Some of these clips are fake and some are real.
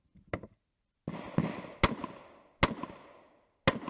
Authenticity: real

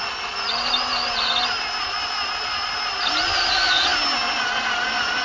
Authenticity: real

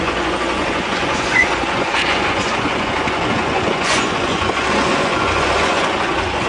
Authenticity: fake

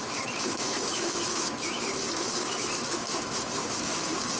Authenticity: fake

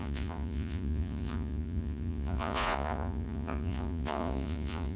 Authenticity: fake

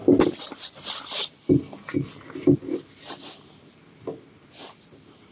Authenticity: real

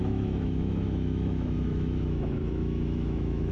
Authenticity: fake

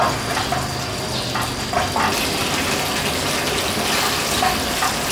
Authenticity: real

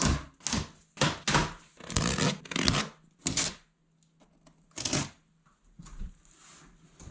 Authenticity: real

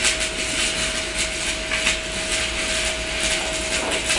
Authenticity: real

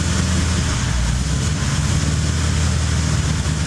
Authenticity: real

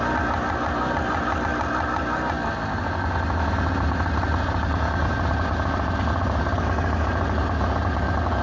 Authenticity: real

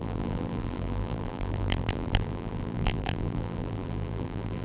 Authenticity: fake